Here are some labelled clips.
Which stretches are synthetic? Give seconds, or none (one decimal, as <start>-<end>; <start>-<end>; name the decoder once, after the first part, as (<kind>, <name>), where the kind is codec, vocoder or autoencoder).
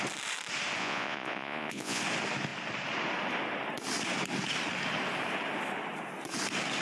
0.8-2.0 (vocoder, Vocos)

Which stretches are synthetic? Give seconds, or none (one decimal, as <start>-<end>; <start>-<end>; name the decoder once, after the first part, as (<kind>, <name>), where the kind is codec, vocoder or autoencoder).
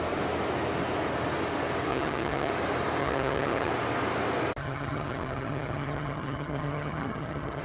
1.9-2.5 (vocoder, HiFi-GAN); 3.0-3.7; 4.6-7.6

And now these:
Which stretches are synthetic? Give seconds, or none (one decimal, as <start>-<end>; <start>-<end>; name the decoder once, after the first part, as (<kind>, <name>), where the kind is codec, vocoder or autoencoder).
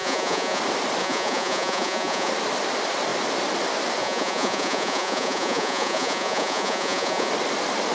0.0-0.6 (vocoder, Vocos); 1.0-2.3; 4.0-7.3